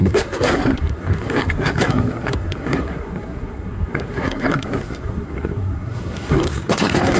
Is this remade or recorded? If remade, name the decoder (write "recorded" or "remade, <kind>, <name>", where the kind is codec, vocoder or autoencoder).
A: remade, codec, SNAC